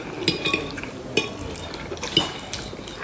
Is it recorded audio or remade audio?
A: recorded